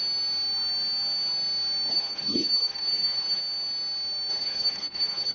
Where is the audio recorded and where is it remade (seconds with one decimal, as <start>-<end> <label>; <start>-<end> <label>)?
0.0-1.9 recorded; 1.9-3.4 remade; 3.4-4.3 recorded; 4.3-5.3 remade